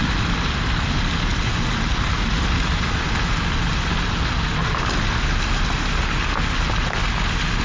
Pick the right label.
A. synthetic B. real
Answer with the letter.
B